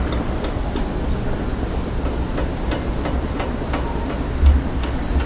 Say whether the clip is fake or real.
real